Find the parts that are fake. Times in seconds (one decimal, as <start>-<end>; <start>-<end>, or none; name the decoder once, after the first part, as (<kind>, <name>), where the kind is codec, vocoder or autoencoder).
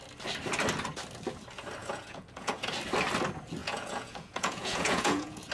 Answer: 1.8-2.7 (vocoder, Vocos); 3.6-5.5